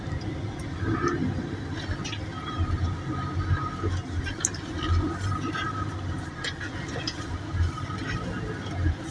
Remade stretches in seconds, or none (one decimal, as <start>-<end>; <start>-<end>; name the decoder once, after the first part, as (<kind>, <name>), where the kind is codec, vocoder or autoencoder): none